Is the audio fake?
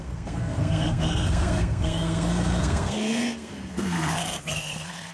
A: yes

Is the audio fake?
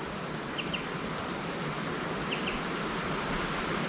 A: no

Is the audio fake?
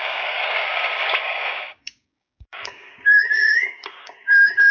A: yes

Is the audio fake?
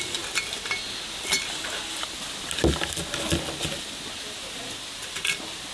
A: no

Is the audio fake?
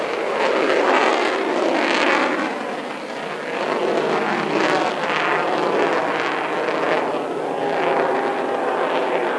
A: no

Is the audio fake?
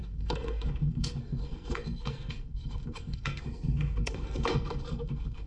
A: yes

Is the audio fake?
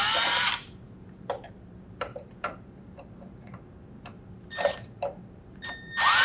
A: yes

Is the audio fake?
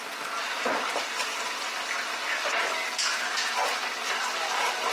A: no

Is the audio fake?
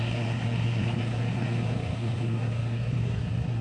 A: yes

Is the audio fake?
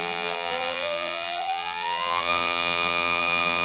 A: yes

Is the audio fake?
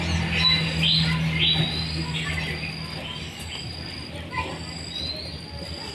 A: no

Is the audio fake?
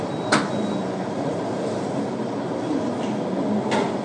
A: no